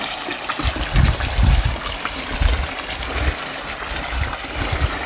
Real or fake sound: real